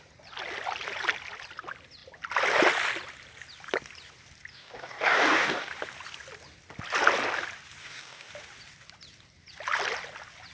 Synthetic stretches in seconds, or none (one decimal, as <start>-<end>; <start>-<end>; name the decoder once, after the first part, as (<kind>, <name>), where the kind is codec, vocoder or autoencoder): 4.5-5.7 (codec, DAC); 7.8-8.3